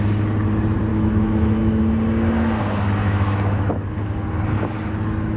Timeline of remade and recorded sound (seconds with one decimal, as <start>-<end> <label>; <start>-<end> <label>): 0.0-0.9 recorded; 0.9-1.8 remade; 1.8-3.0 recorded; 3.0-3.8 remade; 3.8-5.4 recorded